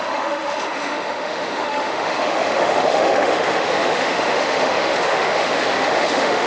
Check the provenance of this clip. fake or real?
fake